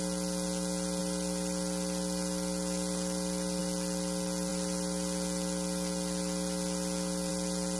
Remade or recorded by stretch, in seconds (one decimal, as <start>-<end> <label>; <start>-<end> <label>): 0.0-7.8 recorded